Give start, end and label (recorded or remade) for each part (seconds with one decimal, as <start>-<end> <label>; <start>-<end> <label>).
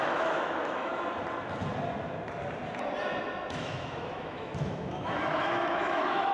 0.0-0.9 remade; 0.9-3.5 recorded; 3.5-6.3 remade